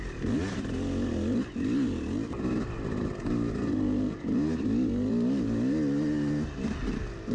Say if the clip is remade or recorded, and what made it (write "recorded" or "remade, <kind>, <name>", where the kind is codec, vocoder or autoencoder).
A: recorded